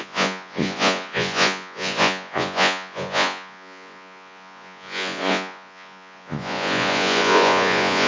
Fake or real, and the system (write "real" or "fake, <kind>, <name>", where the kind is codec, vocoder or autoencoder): fake, vocoder, Vocos